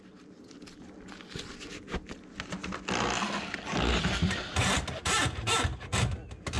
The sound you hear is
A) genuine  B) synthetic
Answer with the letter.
A